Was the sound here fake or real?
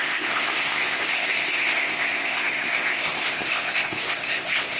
fake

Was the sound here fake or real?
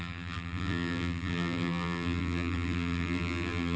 fake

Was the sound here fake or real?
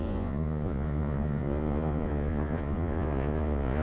fake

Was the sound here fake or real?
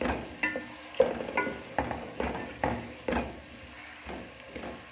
real